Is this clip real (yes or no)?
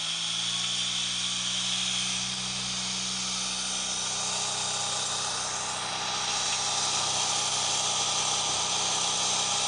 yes